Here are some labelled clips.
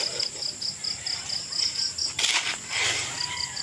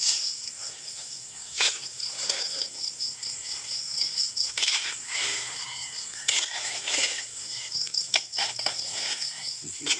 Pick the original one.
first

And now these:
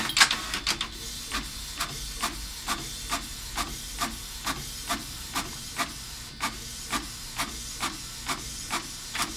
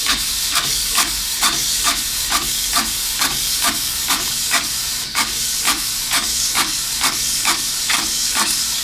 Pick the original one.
first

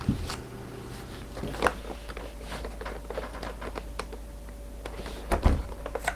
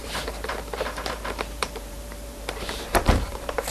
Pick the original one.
first